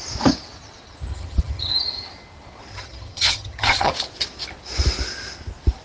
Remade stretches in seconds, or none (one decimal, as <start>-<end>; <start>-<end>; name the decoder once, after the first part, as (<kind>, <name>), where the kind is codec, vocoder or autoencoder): 1.1-1.7 (vocoder, HiFi-GAN); 2.7-3.9